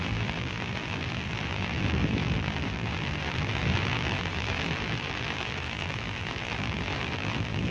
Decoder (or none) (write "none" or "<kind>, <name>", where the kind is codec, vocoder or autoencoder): vocoder, BigVGAN v2